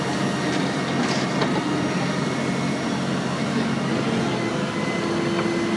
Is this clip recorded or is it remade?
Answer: recorded